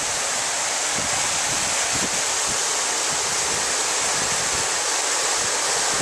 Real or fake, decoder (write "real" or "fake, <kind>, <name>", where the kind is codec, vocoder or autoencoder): real